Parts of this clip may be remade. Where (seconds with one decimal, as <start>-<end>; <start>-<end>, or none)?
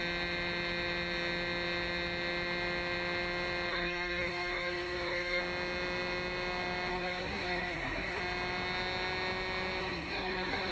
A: 3.7-5.4; 6.9-8.2; 9.8-10.7